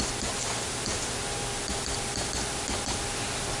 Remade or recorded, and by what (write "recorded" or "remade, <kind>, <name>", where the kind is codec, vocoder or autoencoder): recorded